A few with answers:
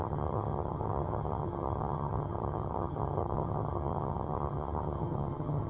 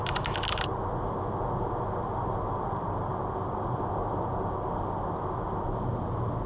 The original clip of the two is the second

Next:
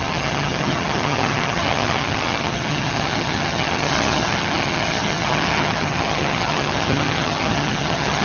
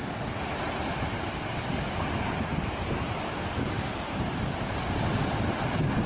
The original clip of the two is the second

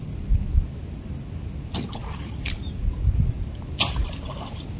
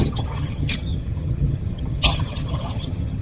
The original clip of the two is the first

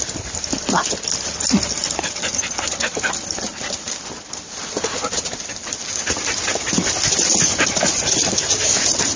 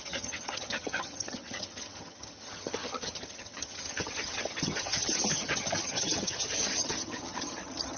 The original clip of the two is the first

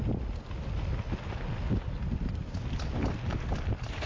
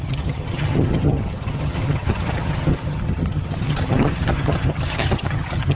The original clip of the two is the first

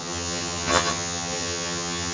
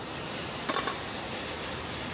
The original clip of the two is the second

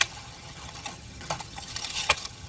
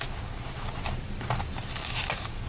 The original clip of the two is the second